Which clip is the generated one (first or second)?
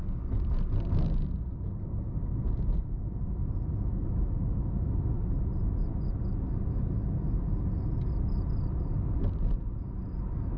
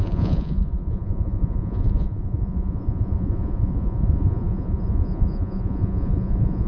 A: second